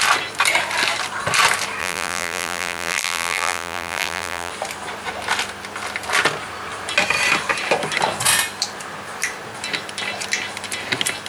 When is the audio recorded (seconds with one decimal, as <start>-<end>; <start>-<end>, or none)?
0.0-1.8; 4.5-11.3